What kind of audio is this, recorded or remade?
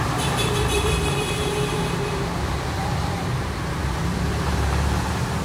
remade